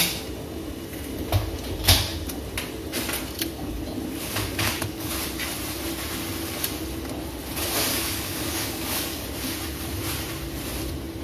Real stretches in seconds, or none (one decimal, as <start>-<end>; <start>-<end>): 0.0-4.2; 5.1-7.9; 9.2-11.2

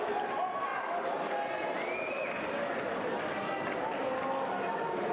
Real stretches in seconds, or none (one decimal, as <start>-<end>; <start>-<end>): 0.0-5.1

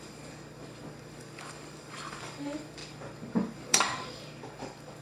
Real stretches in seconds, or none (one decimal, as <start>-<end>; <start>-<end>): none

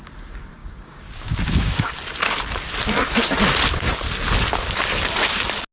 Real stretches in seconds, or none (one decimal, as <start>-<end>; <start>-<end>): 0.0-0.6; 1.9-5.7

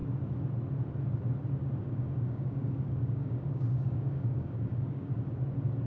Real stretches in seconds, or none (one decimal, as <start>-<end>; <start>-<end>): 0.0-1.6; 5.1-5.9

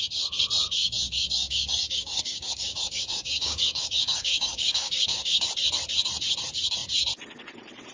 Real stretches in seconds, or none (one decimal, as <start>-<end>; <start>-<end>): 0.0-0.8; 5.5-7.9

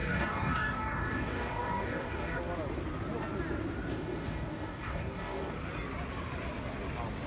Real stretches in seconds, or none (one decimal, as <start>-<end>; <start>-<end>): 2.4-3.9; 5.5-7.3